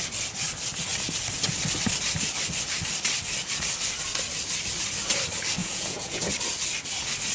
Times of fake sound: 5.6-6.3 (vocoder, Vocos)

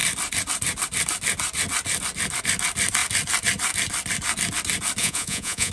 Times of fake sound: 5.0-5.7 (vocoder, Vocos)

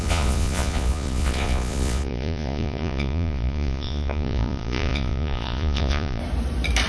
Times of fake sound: 0.0-6.2 (vocoder, Vocos)

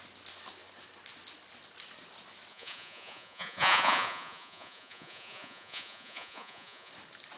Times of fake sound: 2.5-6.9 (vocoder, Vocos)

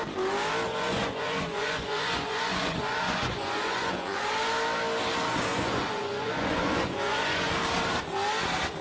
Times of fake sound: 0.7-4.2 (vocoder, Vocos); 5.5-7.5

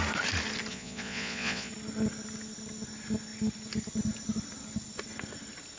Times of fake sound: 0.7-1.7 (vocoder, Vocos)

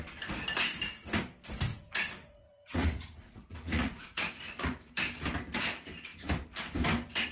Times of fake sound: 1.7-4.9 (vocoder, Vocos)